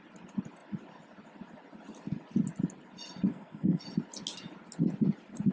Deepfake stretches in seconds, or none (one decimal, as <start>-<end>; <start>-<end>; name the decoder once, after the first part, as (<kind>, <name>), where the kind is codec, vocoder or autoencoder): 3.3-3.8 (codec, SNAC)